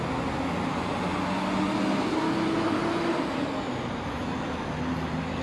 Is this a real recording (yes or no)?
yes